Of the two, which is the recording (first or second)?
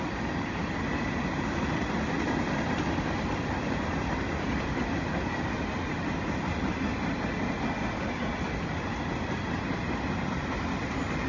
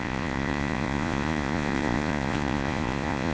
first